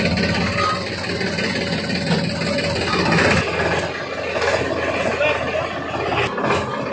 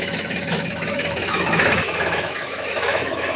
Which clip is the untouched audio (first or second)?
first